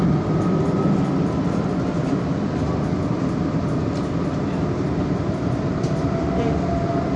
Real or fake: real